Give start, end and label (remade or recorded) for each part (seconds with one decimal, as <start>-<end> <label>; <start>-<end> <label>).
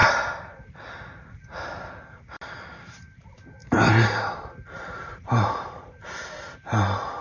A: 0.0-3.6 recorded; 3.6-6.3 remade; 6.3-7.2 recorded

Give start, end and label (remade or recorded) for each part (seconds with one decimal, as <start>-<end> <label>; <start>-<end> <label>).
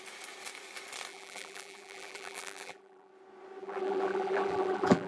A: 0.0-1.1 recorded; 1.1-3.1 remade; 3.1-3.6 recorded; 3.6-5.1 remade